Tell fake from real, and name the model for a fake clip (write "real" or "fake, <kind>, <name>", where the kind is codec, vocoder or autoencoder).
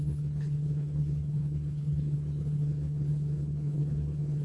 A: fake, codec, HILCodec